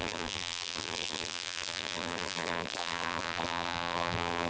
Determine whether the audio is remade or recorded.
remade